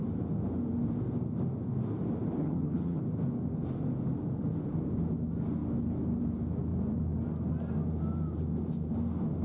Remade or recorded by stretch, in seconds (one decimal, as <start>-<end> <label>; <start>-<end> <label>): 0.0-2.4 recorded; 2.4-3.0 remade; 3.0-9.4 recorded